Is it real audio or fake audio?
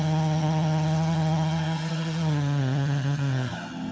fake